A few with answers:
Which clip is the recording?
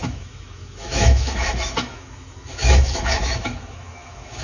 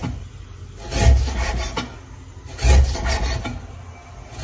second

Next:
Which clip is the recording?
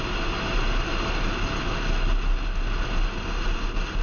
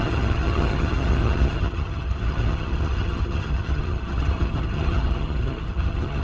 first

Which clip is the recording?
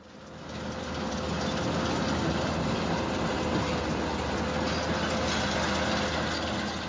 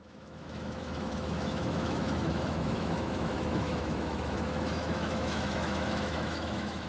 first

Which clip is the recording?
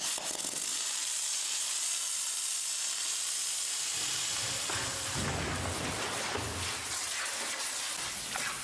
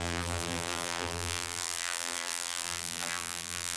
first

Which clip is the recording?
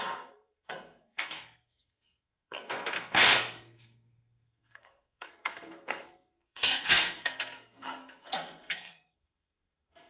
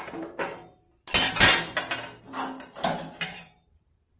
second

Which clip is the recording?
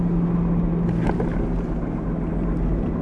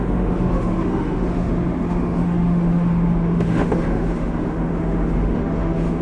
first